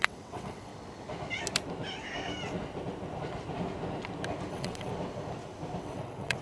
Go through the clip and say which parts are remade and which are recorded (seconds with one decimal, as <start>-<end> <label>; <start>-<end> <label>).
0.0-0.7 remade; 0.7-4.5 recorded; 4.5-4.9 remade; 4.9-5.8 recorded; 5.8-6.4 remade